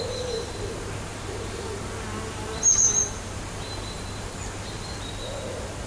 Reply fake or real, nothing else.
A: fake